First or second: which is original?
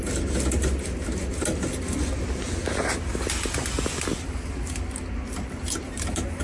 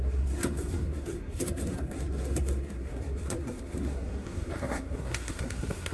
first